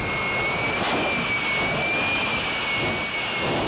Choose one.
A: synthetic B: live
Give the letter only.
B